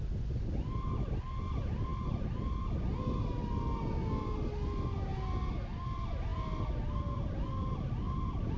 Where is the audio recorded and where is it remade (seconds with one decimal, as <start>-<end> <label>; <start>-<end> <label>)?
0.0-1.9 recorded; 1.9-2.7 remade; 2.7-8.6 recorded